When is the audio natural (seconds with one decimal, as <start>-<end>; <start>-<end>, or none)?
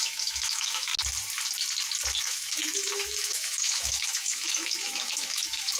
0.9-2.2